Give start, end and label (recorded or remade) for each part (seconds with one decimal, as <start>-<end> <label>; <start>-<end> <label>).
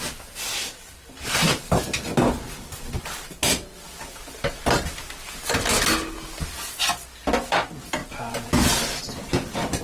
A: 0.0-0.6 recorded; 0.6-1.8 remade; 1.8-8.0 recorded; 8.0-8.5 remade; 8.5-9.8 recorded